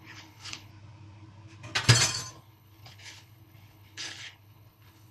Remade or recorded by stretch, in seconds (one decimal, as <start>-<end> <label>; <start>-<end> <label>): 0.0-0.7 remade; 0.7-2.3 recorded; 2.3-5.1 remade